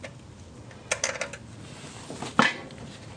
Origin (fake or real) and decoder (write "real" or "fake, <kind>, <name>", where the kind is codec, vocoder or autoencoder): real